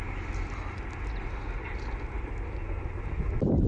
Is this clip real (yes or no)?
yes